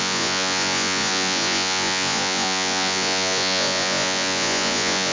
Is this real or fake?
fake